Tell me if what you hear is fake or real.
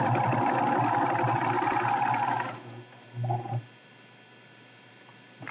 real